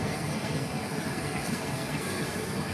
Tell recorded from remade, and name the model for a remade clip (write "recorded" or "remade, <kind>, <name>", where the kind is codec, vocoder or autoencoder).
remade, codec, SNAC